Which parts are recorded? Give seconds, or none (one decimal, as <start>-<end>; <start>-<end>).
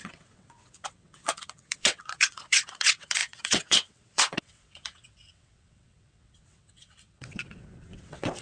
none